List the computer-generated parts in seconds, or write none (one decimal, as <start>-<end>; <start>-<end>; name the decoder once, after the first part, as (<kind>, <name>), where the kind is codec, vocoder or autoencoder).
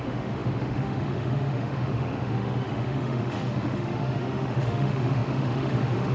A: 0.0-6.1 (autoencoder, DAC-VAE)